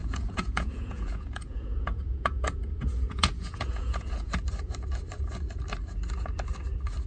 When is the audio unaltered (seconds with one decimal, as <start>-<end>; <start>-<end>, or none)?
4.3-7.1